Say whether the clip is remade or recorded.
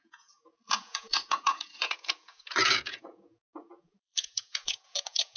remade